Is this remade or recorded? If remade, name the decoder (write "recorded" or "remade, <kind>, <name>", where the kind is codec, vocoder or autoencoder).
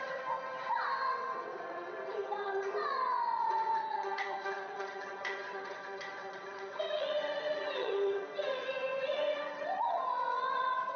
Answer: remade, vocoder, WaveNeXt